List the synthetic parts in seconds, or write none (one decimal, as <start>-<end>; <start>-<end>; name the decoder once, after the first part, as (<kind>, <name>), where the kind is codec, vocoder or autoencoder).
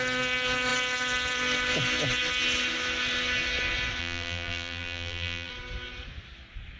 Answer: 4.0-5.5 (vocoder, BigVGAN v2)